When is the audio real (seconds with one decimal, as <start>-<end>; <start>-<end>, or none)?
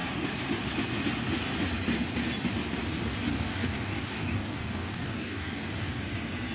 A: 0.0-3.3; 6.0-6.5